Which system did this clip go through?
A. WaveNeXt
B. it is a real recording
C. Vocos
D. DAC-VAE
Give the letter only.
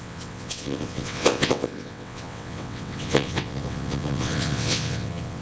A